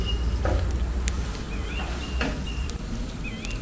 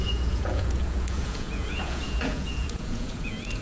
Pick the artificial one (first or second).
second